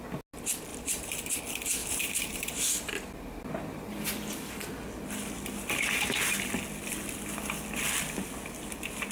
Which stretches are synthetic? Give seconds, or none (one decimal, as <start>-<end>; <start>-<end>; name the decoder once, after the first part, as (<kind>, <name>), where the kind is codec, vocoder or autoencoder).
0.7-1.4 (vocoder, BigVGAN v2); 1.8-2.7